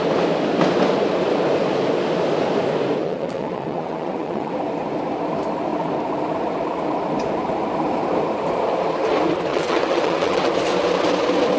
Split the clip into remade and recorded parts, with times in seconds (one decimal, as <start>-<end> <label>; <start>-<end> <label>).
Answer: 0.0-3.0 recorded; 3.0-4.5 remade; 4.5-9.5 recorded; 9.5-10.5 remade; 10.5-11.6 recorded

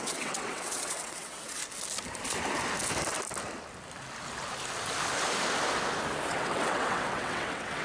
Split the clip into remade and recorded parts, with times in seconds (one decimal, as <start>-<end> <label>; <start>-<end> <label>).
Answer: 0.0-1.6 remade; 1.6-6.3 recorded; 6.3-7.8 remade